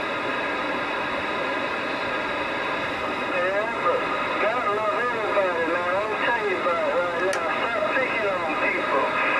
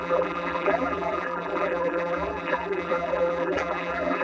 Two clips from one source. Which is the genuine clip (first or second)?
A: first